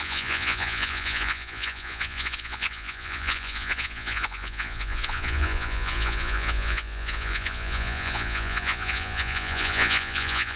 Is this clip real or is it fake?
fake